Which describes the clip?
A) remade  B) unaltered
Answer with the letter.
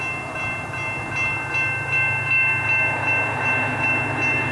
B